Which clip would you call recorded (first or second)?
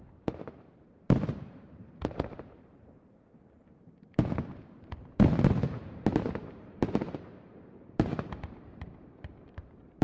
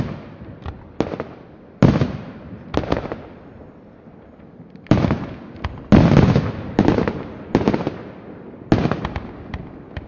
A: second